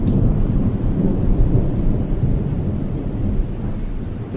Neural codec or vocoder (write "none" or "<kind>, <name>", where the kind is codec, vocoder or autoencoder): none